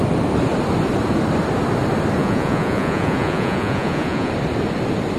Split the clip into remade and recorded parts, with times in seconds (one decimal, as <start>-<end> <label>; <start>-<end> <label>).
0.0-2.2 recorded; 2.2-4.3 remade; 4.3-5.2 recorded